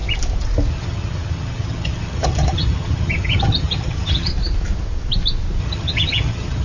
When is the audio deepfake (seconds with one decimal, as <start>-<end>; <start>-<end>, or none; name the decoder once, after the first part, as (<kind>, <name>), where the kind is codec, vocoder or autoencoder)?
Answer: 0.7-4.3 (vocoder, HiFi-GAN); 5.6-6.6